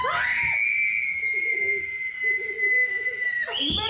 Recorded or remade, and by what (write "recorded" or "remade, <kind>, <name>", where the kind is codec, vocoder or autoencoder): recorded